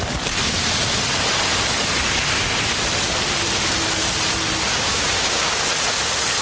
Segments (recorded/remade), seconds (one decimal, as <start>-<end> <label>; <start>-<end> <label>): 0.0-4.7 recorded; 4.7-5.7 remade; 5.7-6.4 recorded